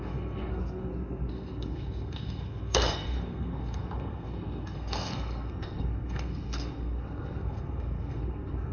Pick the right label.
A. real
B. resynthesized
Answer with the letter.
B